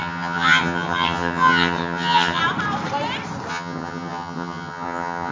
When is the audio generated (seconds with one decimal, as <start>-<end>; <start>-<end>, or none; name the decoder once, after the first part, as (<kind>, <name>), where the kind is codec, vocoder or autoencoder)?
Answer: 0.0-2.4 (vocoder, HiFi-GAN); 3.5-5.3